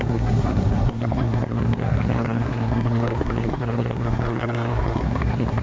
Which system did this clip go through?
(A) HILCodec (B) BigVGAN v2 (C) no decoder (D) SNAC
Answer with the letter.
D